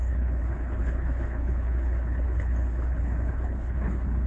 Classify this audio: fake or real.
fake